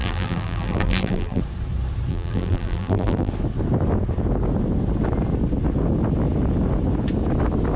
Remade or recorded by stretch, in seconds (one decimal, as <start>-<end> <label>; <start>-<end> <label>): 0.0-1.4 remade; 1.4-2.1 recorded; 2.1-3.3 remade; 3.3-7.8 recorded